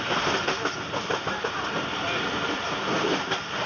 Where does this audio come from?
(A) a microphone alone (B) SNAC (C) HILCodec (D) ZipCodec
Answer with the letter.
A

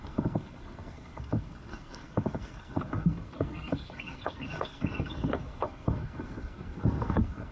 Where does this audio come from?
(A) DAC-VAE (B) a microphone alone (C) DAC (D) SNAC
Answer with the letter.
D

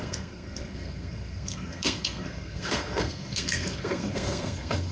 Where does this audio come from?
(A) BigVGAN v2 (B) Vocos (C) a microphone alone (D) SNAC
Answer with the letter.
D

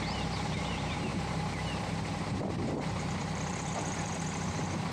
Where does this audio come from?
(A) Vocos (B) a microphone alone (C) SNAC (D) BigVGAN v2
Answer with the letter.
D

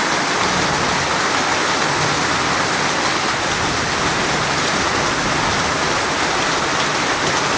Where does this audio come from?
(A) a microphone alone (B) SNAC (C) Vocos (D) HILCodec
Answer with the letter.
A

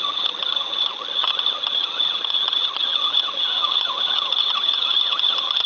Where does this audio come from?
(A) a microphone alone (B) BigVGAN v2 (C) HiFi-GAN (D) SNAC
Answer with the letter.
C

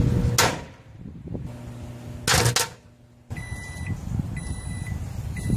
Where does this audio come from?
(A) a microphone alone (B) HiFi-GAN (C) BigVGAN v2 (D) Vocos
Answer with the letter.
A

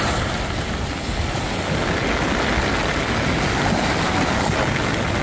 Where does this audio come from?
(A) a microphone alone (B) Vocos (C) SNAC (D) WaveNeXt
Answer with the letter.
A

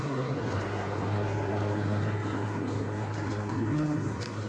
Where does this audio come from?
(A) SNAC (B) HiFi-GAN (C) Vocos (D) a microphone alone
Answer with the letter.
A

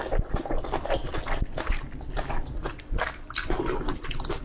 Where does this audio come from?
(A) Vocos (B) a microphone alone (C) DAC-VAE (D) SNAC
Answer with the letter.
B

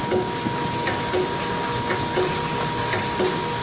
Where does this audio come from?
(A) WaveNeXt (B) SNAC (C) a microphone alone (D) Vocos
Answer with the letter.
C